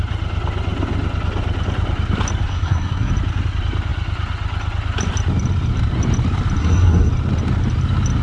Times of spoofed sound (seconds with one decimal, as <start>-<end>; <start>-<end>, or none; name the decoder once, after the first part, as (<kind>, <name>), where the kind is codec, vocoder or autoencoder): 2.5-3.1 (codec, SNAC); 6.6-7.1